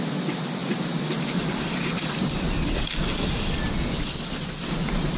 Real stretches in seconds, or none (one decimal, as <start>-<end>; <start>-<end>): 0.0-0.6; 2.9-5.2